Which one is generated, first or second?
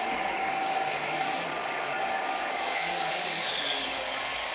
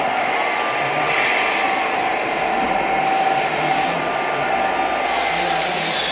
first